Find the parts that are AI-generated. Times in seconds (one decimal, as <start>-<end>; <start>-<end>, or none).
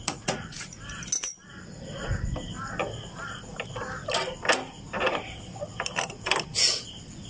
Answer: 0.0-0.8